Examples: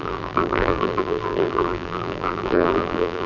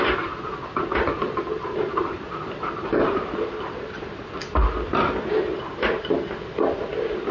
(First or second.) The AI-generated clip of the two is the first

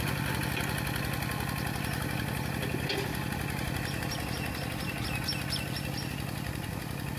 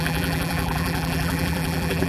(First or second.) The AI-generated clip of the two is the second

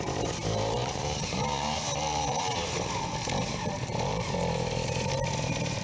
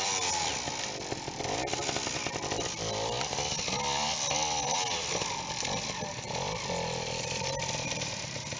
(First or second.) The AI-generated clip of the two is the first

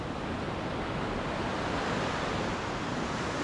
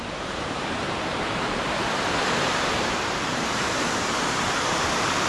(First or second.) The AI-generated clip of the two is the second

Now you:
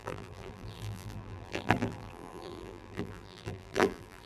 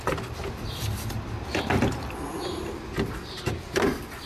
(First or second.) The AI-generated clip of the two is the first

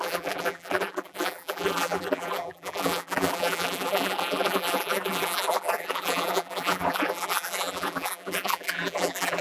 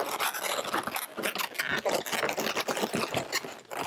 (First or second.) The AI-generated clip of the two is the first